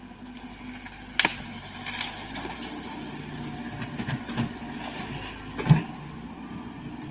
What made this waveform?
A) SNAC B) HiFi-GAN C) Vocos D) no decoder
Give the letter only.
D